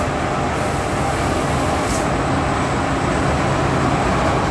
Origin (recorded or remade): recorded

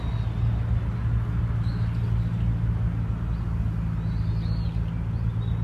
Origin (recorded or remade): recorded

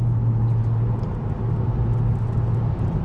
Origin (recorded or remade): recorded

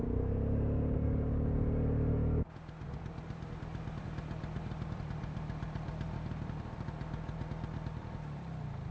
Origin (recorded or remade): recorded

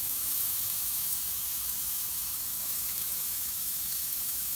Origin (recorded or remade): remade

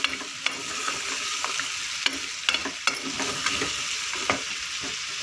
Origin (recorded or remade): recorded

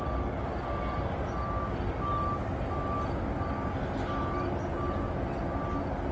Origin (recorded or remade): recorded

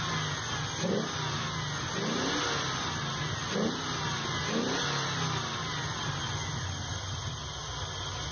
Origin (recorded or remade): recorded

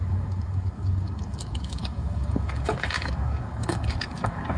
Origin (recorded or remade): remade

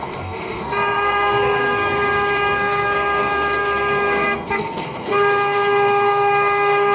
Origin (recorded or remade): remade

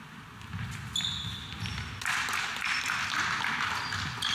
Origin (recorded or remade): recorded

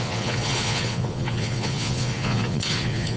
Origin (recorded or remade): remade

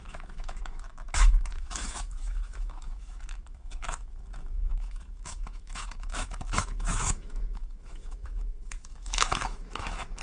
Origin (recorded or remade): remade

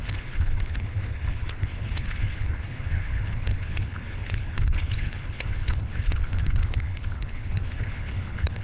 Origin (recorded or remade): remade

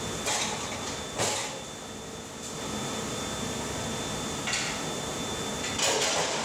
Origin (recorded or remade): recorded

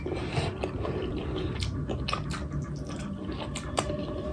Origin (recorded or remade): recorded